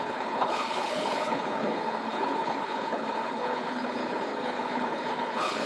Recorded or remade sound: remade